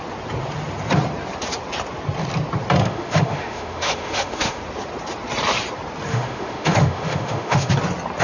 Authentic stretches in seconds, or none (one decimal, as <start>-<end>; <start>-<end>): 0.0-2.8; 4.6-6.1; 7.7-8.2